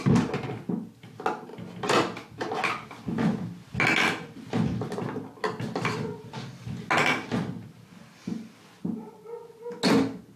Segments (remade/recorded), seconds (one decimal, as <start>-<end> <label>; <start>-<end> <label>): 0.0-10.4 recorded